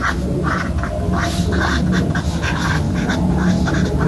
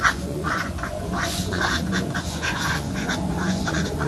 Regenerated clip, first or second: second